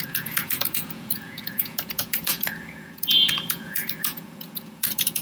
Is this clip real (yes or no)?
no